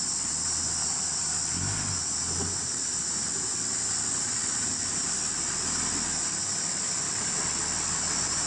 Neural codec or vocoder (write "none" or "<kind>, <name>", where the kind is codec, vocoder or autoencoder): none